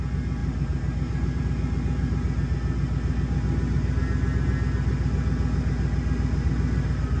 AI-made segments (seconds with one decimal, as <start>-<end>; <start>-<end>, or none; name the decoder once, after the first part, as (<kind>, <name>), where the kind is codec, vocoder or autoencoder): 0.4-1.4 (vocoder, BigVGAN v2)